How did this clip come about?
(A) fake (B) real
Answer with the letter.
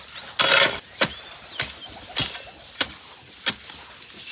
B